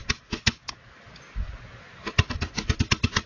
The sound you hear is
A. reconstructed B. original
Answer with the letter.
B